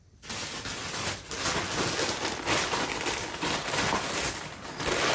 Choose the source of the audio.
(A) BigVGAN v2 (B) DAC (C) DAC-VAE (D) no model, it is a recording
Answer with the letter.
D